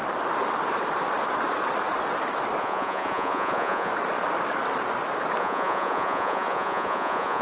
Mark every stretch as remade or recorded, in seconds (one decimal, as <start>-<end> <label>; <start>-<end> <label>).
0.0-2.6 recorded; 2.6-3.9 remade; 3.9-5.4 recorded; 5.4-7.4 remade